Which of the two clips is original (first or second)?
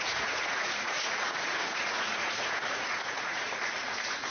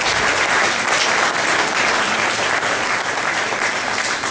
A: second